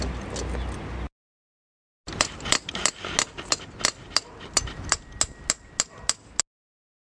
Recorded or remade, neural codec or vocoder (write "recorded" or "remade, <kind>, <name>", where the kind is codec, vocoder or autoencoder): recorded